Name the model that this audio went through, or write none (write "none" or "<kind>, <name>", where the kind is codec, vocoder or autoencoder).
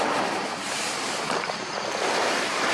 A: vocoder, BigVGAN v2